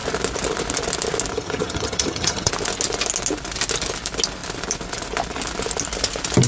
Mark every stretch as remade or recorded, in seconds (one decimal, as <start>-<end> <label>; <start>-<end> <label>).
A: 0.0-1.3 recorded; 1.3-2.5 remade; 2.5-6.5 recorded